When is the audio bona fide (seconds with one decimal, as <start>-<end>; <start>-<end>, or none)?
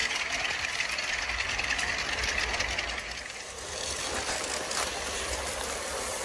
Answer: 0.0-3.0